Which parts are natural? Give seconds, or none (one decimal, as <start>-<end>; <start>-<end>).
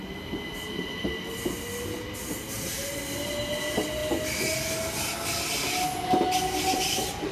0.0-7.3